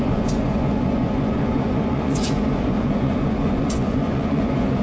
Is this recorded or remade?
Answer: remade